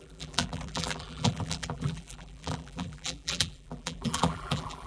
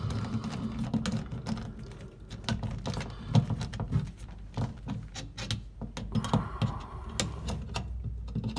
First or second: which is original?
second